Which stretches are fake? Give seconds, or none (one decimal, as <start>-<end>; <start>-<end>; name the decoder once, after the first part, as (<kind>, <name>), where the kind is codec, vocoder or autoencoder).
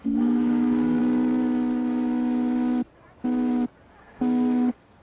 0.0-1.0 (codec, SNAC); 4.0-5.0